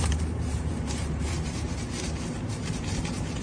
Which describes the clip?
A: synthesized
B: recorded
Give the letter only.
A